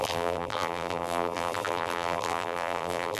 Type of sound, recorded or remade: remade